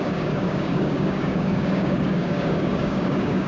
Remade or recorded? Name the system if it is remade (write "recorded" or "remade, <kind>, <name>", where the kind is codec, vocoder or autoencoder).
remade, codec, DAC